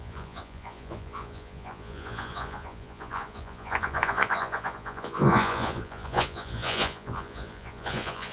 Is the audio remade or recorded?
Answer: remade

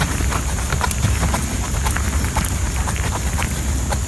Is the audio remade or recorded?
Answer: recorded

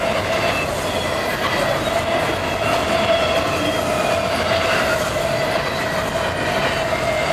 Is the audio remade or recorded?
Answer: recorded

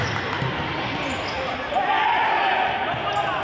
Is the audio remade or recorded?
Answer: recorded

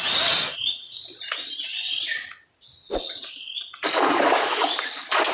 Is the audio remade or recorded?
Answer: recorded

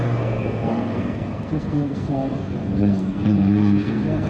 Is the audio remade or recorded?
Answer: remade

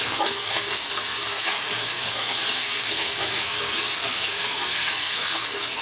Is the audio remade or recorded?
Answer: remade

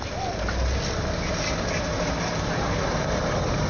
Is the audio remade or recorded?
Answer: recorded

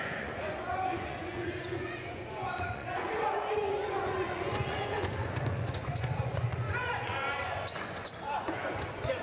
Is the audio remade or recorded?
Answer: remade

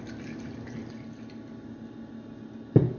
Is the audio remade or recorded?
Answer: recorded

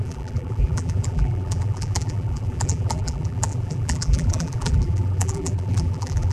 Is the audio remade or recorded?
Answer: remade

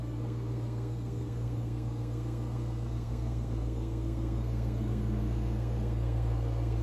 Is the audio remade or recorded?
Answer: remade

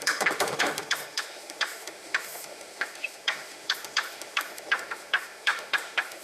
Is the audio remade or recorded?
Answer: remade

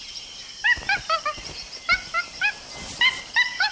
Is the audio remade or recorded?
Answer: recorded